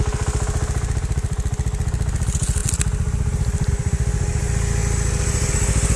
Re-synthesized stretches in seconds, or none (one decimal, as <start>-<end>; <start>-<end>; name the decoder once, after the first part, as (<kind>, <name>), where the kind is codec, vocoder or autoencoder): none